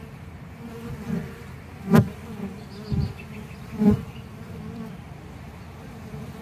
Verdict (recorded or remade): recorded